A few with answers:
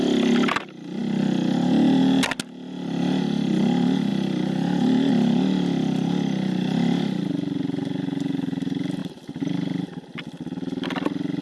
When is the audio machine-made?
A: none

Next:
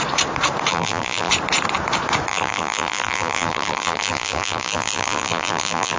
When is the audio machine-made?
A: 0.7-1.3 (vocoder, BigVGAN v2); 2.3-6.0

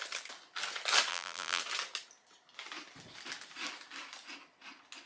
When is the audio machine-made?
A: 1.1-1.6 (vocoder, BigVGAN v2)

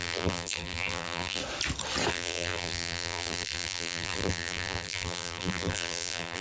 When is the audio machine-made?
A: 0.0-1.4 (vocoder, BigVGAN v2); 2.1-6.4

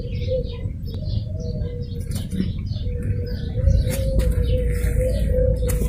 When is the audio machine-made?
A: 2.3-4.5 (vocoder, BigVGAN v2)

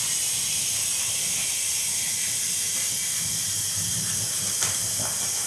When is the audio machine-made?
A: 3.0-5.5 (vocoder, BigVGAN v2)